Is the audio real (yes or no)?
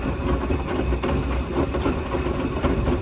yes